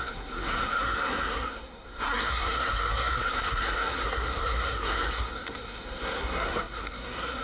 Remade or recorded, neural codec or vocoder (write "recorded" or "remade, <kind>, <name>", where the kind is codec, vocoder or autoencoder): remade, codec, SNAC